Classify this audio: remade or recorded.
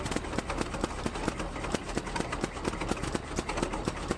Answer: recorded